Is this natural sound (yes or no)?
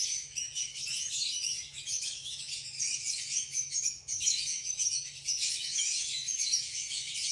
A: no